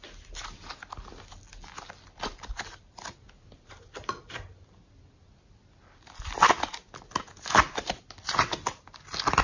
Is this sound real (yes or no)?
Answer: yes